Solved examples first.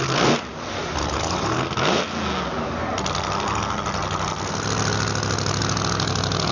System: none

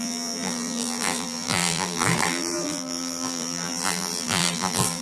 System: vocoder, BigVGAN v2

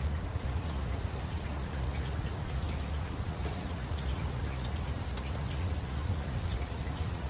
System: vocoder, Vocos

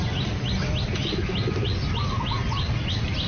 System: none